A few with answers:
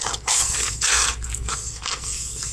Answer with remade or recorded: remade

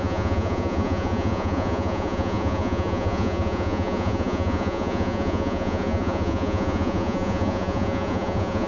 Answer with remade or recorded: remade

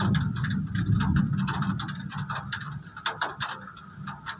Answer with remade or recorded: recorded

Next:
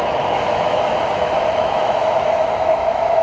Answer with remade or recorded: remade